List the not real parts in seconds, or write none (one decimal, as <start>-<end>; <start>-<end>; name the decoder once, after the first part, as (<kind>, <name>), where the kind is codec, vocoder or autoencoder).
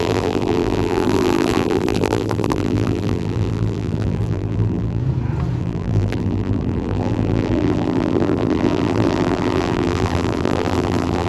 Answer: 0.0-5.0 (vocoder, BigVGAN v2); 5.6-11.3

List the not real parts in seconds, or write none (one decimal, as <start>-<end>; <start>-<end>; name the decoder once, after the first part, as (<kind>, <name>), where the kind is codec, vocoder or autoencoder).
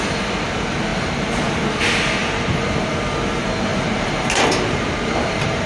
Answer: 2.2-2.9 (vocoder, BigVGAN v2); 3.7-5.7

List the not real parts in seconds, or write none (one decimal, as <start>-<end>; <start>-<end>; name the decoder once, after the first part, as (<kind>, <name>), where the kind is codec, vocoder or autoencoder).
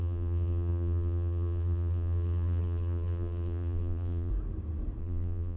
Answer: 0.0-4.3 (vocoder, BigVGAN v2); 5.0-5.6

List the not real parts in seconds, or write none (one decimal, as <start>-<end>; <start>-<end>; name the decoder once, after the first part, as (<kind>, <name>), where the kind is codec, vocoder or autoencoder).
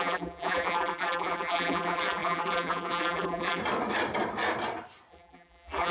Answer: 0.0-3.6 (vocoder, BigVGAN v2); 5.1-5.9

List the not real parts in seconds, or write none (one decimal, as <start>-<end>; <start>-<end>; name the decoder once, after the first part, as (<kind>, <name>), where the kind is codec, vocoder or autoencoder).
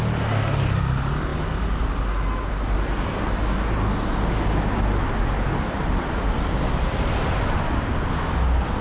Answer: none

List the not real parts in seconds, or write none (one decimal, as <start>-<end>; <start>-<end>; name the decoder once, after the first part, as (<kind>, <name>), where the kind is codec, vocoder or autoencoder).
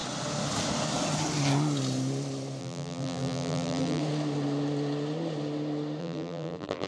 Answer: 2.6-4.0 (vocoder, BigVGAN v2); 6.0-6.9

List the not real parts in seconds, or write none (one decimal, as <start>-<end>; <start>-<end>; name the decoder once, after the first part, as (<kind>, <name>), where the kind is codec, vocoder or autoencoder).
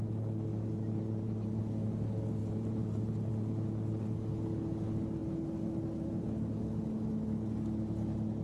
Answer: 0.5-1.6 (vocoder, BigVGAN v2); 2.4-3.3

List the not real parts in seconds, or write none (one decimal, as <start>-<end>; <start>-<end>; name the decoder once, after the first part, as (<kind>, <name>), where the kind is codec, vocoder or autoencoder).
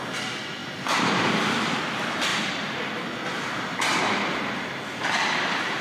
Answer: 0.6-1.2 (vocoder, BigVGAN v2); 2.3-2.8